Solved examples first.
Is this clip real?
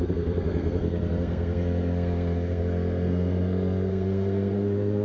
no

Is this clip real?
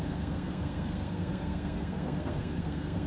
no